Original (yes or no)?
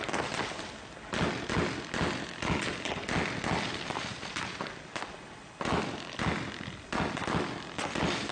yes